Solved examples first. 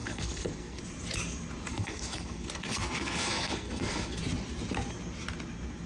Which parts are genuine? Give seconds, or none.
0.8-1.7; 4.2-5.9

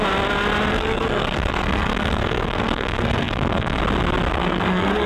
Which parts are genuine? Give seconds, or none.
0.0-0.7; 3.8-4.3

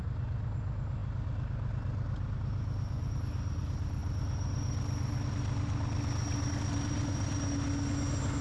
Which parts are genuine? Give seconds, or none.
0.0-8.4

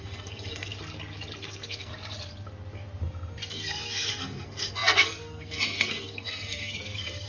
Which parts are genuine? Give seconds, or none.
0.7-1.4; 1.9-3.5